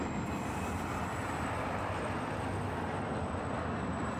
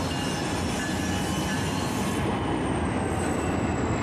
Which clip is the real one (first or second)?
second